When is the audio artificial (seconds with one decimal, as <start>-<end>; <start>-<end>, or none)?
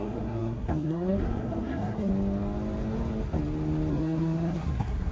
0.0-2.1; 3.9-5.1